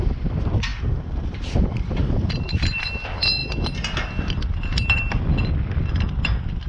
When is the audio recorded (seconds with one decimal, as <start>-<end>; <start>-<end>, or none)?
0.0-0.7; 2.8-6.7